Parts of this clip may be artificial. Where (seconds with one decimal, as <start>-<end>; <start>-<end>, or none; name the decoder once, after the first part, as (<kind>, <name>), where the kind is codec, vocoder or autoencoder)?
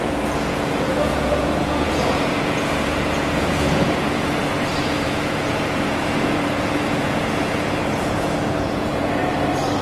0.0-4.4 (vocoder, Vocos); 5.1-9.2